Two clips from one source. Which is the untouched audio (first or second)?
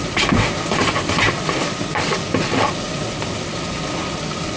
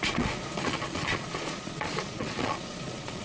first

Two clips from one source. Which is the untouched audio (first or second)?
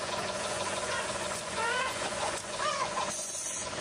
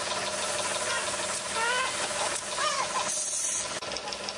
second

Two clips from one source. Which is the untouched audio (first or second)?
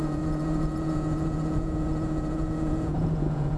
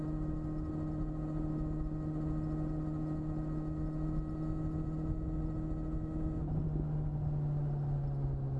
second